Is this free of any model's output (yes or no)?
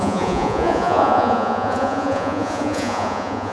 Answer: no